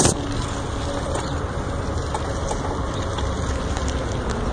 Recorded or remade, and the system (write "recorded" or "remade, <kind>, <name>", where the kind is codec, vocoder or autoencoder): recorded